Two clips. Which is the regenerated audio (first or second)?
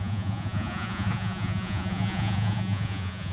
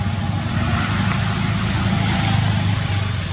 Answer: first